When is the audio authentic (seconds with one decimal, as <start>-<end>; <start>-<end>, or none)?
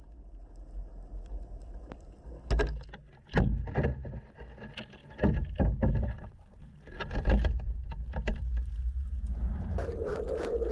0.0-10.7